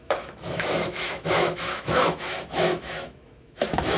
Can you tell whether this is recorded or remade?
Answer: remade